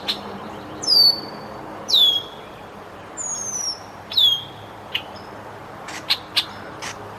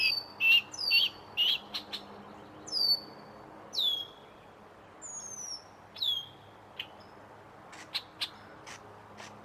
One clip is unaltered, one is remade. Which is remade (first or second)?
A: first